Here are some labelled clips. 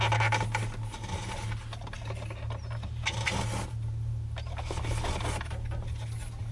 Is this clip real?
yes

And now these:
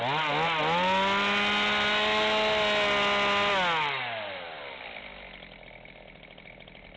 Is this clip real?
yes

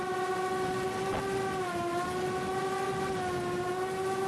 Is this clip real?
yes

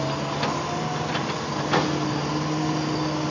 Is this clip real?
yes